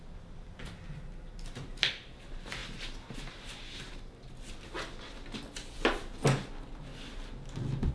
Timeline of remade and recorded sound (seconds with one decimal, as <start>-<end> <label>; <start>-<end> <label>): 0.0-7.9 recorded